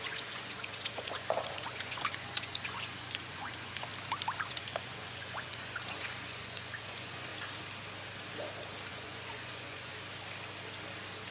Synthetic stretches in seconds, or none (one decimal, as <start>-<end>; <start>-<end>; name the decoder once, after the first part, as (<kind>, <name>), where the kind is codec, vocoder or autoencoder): 0.0-3.9 (vocoder, Vocos); 4.5-7.3; 8.9-9.9

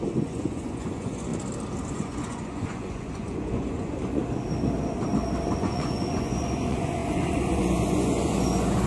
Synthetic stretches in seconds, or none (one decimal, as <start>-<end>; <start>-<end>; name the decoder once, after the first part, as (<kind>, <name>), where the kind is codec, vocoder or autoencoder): 0.0-1.3 (vocoder, Vocos); 1.9-4.2; 5.5-8.9